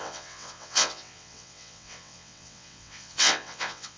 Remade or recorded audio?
remade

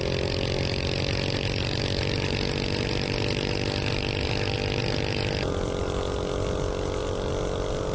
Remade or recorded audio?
recorded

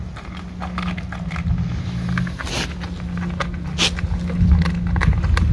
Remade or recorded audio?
recorded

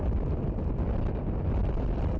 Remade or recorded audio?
recorded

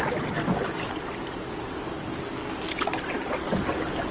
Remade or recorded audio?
recorded